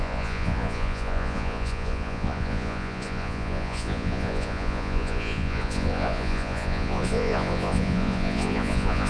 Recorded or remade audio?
remade